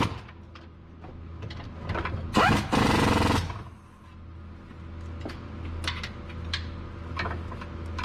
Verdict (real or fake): real